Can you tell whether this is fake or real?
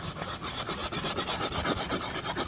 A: real